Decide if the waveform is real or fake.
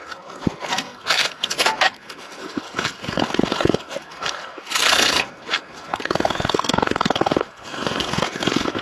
fake